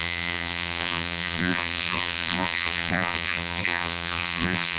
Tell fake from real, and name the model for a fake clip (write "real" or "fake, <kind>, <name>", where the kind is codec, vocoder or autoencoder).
fake, vocoder, BigVGAN v2